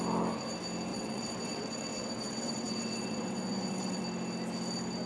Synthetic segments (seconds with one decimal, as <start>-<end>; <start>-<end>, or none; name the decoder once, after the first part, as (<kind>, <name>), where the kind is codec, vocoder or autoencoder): 0.9-4.0 (vocoder, WaveNeXt)